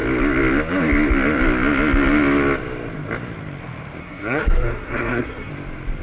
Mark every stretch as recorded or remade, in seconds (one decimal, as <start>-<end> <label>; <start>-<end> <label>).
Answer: 0.0-4.0 recorded; 4.0-5.5 remade; 5.5-6.0 recorded